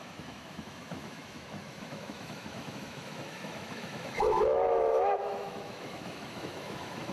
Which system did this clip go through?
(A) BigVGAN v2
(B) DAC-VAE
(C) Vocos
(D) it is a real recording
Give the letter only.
B